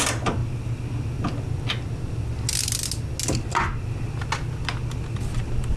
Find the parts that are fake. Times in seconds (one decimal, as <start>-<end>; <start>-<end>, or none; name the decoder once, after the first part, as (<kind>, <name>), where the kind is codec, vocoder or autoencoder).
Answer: none